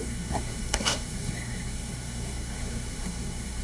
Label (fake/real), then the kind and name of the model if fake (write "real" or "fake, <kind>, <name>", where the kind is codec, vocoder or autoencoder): fake, codec, SNAC